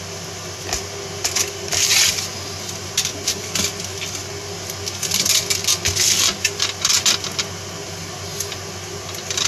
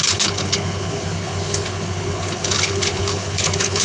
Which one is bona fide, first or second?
first